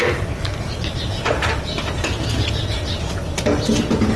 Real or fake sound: real